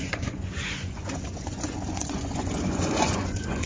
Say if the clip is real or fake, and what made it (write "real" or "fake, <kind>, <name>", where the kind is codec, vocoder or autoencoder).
fake, vocoder, Vocos